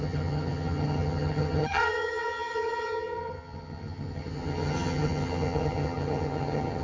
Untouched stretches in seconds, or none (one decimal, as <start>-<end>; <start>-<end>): none